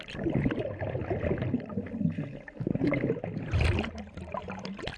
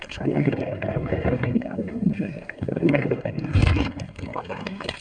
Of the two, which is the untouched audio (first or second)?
first